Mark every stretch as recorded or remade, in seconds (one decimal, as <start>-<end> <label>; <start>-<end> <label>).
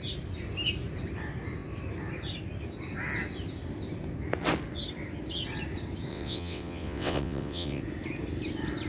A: 0.0-6.1 recorded; 6.1-7.8 remade; 7.8-8.9 recorded